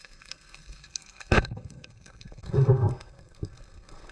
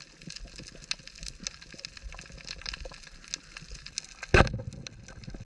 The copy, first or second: first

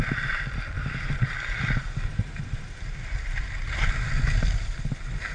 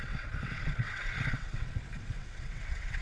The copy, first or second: second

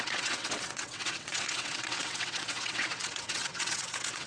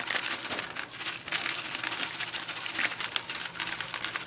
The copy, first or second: first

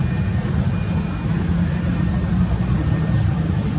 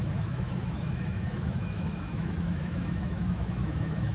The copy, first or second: second